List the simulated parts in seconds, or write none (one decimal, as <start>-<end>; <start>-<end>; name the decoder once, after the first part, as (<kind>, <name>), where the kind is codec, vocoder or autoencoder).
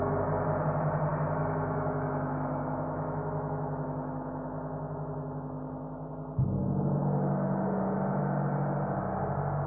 1.1-6.1 (autoencoder, DAC-VAE)